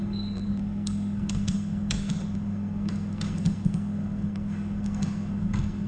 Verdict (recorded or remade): remade